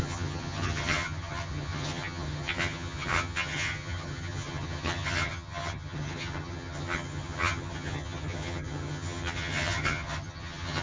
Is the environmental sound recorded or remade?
remade